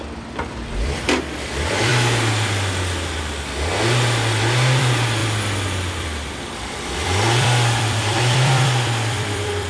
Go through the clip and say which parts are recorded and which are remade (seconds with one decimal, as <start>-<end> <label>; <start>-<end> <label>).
0.0-1.9 remade; 1.9-4.8 recorded; 4.8-5.2 remade; 5.2-5.9 recorded; 5.9-9.7 remade

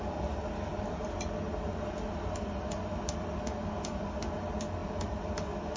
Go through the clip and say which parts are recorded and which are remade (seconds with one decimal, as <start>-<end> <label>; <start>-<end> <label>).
0.0-5.8 recorded

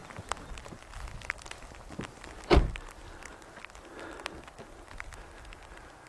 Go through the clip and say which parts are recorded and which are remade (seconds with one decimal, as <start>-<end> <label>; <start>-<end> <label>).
0.0-6.1 recorded

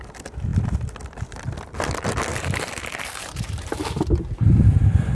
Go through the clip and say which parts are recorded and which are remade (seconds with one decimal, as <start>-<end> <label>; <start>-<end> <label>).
0.0-2.3 recorded; 2.3-5.1 remade

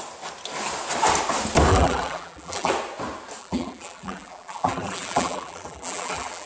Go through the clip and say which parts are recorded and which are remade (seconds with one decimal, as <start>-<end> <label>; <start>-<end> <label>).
0.0-1.7 recorded; 1.7-2.7 remade; 2.7-3.4 recorded; 3.4-6.5 remade